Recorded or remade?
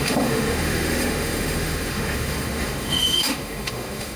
remade